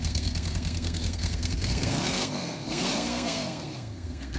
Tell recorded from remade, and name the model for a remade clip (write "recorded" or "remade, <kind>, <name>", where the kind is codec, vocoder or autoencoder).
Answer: remade, codec, SNAC